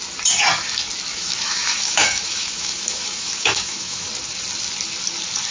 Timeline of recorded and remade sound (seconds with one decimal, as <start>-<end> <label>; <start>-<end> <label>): 0.0-1.1 recorded; 1.1-4.1 remade; 4.1-5.5 recorded